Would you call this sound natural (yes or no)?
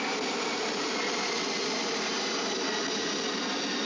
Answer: yes